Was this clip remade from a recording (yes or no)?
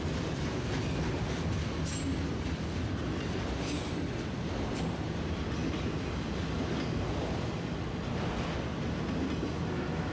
no